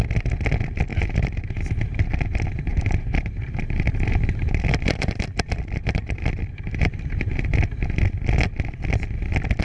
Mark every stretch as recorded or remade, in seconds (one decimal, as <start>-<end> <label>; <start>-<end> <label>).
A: 0.0-0.9 recorded; 0.9-1.7 remade; 1.7-2.7 recorded; 2.7-7.4 remade; 7.4-9.6 recorded